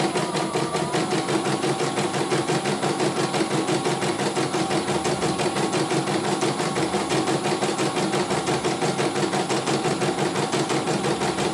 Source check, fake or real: real